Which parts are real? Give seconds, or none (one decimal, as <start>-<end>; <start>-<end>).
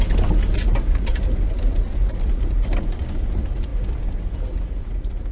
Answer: 3.7-4.8